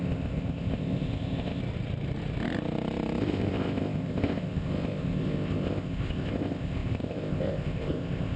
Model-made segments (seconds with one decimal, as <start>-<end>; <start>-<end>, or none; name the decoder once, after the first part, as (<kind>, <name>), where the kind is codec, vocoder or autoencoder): 0.0-1.6 (codec, ZipCodec); 3.2-8.4